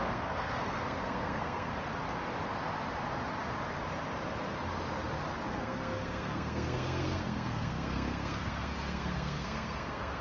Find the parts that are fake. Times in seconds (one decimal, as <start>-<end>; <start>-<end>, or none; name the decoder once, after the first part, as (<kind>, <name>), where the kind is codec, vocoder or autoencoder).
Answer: 0.0-1.7 (codec, SNAC); 5.5-10.2